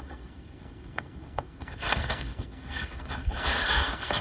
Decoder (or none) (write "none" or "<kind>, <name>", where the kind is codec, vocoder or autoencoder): codec, SNAC